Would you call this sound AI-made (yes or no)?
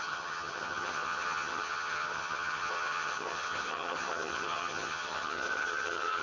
yes